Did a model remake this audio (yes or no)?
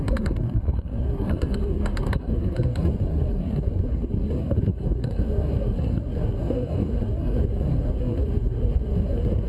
yes